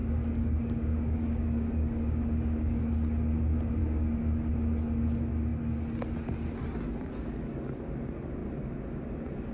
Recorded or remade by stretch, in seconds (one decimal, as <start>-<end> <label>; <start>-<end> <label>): 0.0-2.8 remade; 2.8-3.8 recorded; 3.8-4.5 remade; 4.5-9.5 recorded